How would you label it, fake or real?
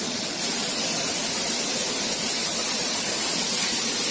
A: real